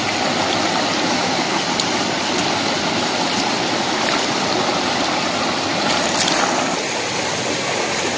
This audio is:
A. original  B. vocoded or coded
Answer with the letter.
A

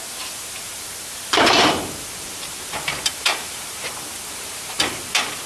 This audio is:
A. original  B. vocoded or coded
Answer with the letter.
B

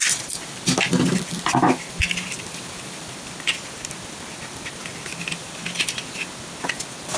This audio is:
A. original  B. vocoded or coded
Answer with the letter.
A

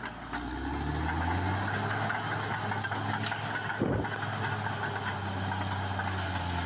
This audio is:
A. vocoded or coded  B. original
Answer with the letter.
B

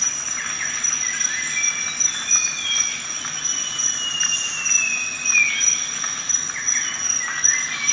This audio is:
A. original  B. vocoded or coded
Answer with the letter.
A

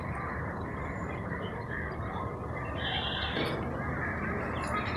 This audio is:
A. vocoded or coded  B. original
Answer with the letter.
A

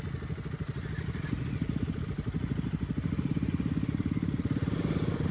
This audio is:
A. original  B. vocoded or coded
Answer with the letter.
A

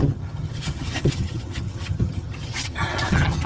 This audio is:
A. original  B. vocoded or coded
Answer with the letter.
B